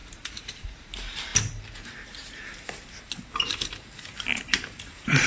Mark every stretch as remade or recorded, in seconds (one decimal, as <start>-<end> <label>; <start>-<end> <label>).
0.0-1.3 remade; 1.3-4.5 recorded; 4.5-5.3 remade